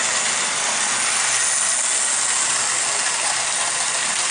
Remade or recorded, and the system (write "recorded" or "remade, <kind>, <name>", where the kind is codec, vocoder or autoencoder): recorded